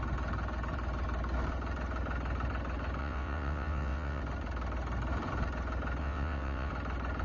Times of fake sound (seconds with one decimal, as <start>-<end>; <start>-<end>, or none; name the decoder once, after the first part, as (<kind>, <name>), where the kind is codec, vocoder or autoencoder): 3.0-4.2 (vocoder, WaveNeXt); 6.0-6.7